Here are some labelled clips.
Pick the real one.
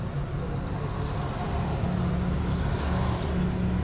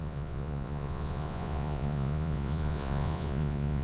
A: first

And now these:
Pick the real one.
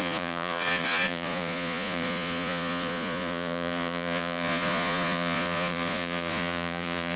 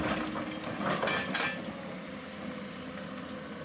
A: second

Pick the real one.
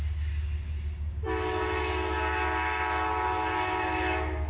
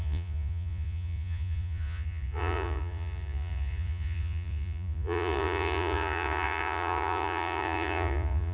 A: first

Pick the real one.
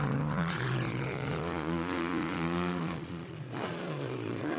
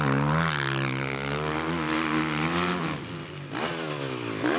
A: second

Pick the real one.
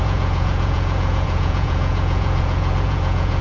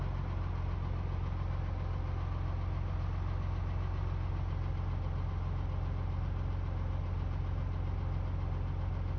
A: second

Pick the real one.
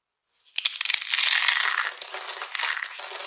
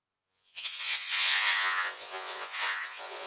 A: first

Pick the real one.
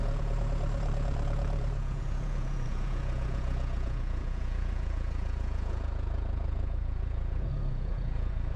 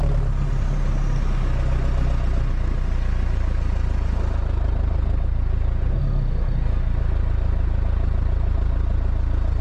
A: second